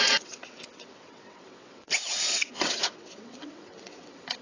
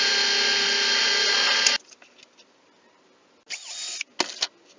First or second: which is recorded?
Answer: second